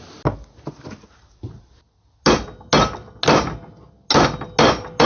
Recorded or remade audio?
recorded